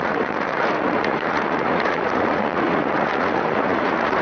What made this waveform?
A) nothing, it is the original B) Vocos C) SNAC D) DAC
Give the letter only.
B